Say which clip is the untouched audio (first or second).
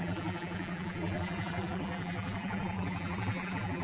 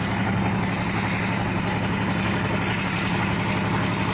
second